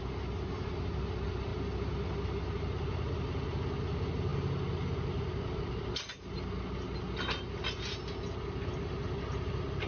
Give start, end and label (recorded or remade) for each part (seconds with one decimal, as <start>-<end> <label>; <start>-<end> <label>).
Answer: 0.0-9.9 recorded